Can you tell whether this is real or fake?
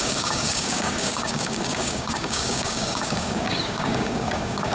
fake